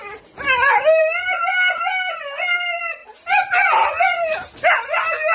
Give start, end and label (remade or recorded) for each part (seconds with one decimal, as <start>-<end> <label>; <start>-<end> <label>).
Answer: 0.0-5.3 recorded